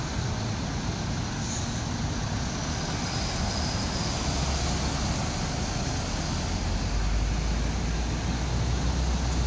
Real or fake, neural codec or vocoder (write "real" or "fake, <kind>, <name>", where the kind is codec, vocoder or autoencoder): real